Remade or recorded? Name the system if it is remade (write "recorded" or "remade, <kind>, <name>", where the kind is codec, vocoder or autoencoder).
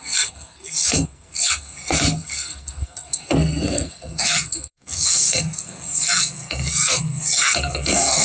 remade, codec, SNAC